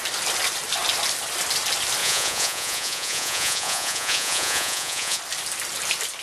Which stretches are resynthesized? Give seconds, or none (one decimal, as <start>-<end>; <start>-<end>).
2.0-5.2

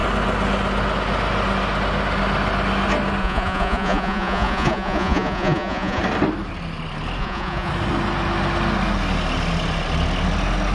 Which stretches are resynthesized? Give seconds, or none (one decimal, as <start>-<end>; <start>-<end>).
3.2-6.0; 7.2-7.7

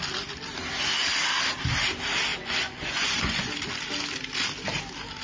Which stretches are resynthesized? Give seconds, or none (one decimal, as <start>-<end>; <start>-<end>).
2.3-3.5

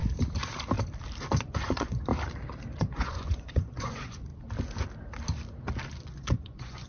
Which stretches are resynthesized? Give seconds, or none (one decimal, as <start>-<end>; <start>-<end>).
1.4-2.1; 2.8-4.3; 6.0-6.9

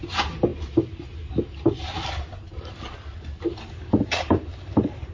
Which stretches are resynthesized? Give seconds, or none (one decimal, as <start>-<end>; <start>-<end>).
none

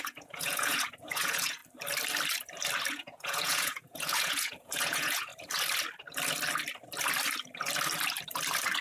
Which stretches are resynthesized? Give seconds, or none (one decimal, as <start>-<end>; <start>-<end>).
0.0-1.6; 2.9-5.3

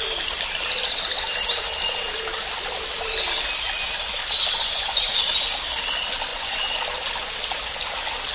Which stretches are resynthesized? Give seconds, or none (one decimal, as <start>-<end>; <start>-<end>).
4.6-5.3; 6.3-6.8